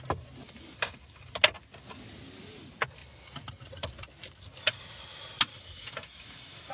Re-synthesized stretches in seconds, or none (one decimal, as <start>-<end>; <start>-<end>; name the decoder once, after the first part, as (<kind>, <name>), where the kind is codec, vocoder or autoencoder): 5.5-6.7 (autoencoder, DAC-VAE)